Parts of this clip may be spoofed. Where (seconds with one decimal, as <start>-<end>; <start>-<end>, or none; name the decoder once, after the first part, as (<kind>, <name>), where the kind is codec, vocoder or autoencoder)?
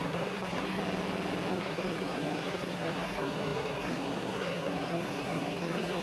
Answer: 0.0-0.8 (codec, SNAC); 1.5-6.0